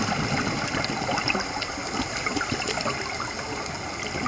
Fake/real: real